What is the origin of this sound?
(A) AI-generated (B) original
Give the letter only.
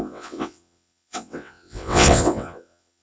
A